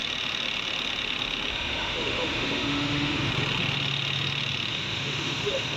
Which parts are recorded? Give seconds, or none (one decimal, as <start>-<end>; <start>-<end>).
0.0-1.5; 3.3-4.7